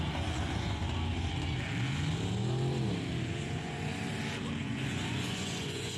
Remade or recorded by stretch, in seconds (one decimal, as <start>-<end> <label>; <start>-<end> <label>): 0.0-0.8 remade; 0.8-3.3 recorded; 3.3-3.9 remade; 3.9-4.6 recorded; 4.6-6.0 remade